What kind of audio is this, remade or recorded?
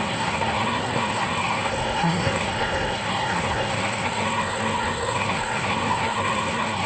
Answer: remade